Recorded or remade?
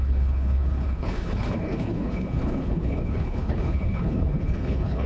remade